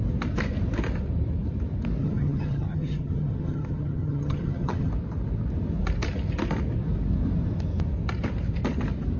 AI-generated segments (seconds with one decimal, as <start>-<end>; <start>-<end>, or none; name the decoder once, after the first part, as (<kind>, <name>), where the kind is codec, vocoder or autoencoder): 2.0-4.9 (vocoder, HiFi-GAN)